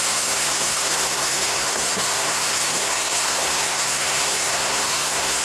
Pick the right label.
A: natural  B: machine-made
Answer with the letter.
B